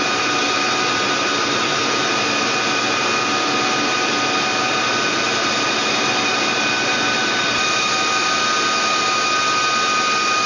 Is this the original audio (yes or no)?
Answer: yes